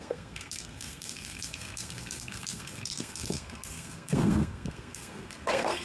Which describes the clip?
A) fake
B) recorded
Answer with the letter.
A